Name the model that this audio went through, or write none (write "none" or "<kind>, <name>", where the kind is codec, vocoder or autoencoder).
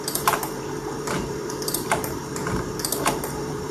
vocoder, BigVGAN v2